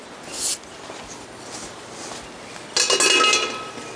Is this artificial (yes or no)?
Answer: no